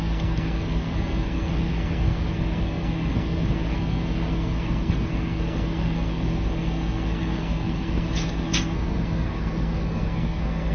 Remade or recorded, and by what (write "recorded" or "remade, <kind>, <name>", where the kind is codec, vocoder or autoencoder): remade, codec, SNAC